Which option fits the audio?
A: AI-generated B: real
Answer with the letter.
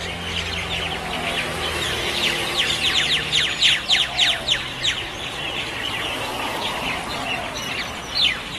B